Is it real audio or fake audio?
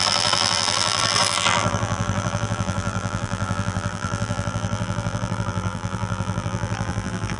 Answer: fake